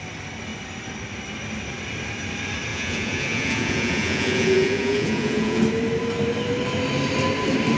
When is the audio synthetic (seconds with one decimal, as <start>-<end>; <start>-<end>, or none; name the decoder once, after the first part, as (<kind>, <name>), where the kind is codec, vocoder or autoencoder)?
2.7-5.6 (vocoder, Vocos)